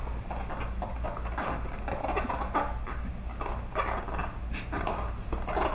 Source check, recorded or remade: recorded